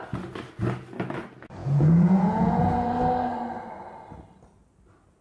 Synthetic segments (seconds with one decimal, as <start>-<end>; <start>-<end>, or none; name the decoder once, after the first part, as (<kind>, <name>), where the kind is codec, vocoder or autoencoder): 1.6-2.9 (vocoder, Vocos)